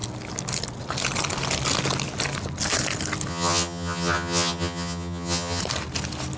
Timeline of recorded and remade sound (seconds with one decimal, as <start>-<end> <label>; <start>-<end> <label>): 0.0-3.3 recorded; 3.3-5.6 remade; 5.6-6.4 recorded